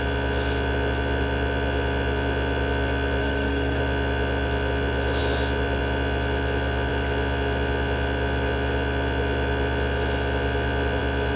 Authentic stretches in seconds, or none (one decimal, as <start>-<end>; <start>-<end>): 0.0-3.2; 3.8-11.4